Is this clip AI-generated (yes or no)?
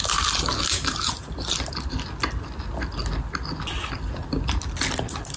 no